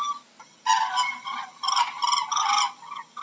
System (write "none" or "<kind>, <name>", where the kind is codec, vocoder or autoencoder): none